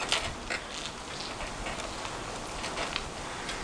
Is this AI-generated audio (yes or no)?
no